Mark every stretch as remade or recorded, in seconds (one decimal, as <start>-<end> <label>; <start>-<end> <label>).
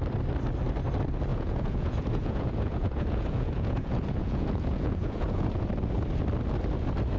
0.0-1.3 recorded; 1.3-5.6 remade; 5.6-7.2 recorded